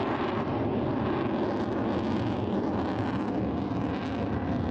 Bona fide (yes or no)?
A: yes